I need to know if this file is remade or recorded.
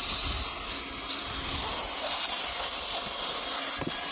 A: recorded